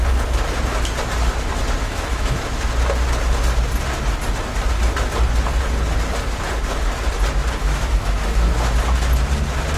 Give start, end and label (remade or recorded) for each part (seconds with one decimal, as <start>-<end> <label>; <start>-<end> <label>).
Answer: 0.0-1.8 recorded; 1.8-2.4 remade; 2.4-7.6 recorded; 7.6-8.5 remade; 8.5-9.8 recorded